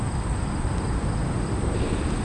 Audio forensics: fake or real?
real